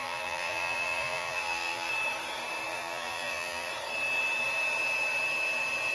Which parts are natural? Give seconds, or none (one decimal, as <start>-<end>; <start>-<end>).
1.9-2.7; 3.7-5.9